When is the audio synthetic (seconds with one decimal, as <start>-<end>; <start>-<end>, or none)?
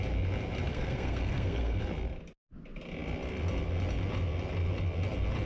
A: 0.7-1.8